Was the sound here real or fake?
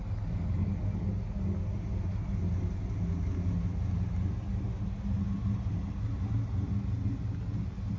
real